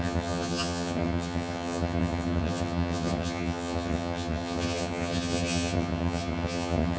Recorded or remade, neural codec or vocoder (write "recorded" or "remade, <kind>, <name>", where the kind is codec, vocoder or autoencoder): remade, vocoder, HiFi-GAN